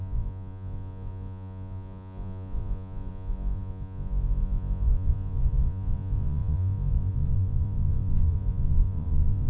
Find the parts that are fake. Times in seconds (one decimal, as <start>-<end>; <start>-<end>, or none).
0.0-9.5